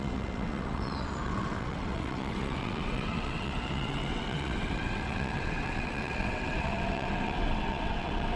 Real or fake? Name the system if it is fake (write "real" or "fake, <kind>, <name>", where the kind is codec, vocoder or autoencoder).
fake, vocoder, WaveNeXt